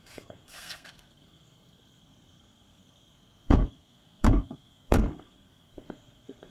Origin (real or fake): fake